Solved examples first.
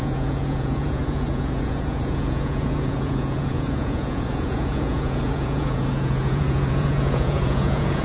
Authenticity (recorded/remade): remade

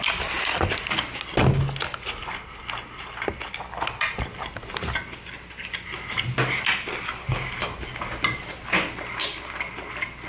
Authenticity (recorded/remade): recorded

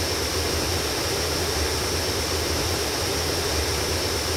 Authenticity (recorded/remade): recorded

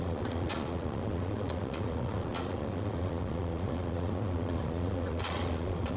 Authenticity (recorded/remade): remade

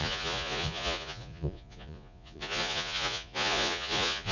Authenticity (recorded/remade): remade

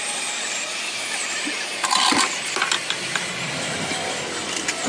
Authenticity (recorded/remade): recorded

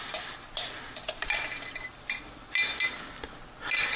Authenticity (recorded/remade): recorded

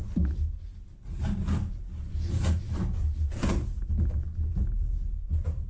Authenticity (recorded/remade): recorded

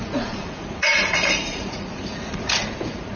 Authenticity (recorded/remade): remade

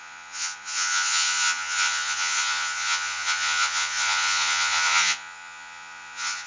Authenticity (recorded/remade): remade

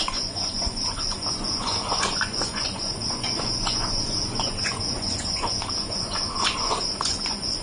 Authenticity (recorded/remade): remade